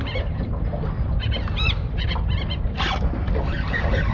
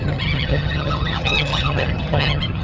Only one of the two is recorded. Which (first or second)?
first